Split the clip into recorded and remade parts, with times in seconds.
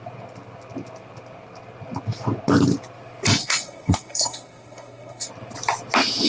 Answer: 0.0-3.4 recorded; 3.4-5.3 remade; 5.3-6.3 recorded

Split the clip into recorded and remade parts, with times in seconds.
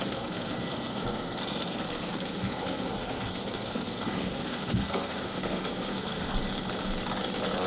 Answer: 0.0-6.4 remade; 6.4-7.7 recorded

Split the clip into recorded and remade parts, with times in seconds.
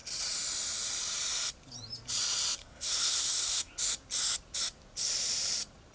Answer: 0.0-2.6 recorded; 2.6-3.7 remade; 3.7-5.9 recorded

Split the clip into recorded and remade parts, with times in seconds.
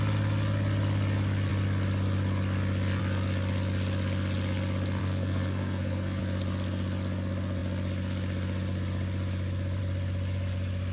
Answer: 0.0-5.0 recorded; 5.0-6.2 remade; 6.2-10.9 recorded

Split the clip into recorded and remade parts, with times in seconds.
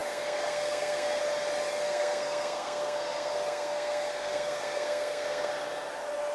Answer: 0.0-1.2 remade; 1.2-1.7 recorded; 1.7-5.5 remade; 5.5-6.3 recorded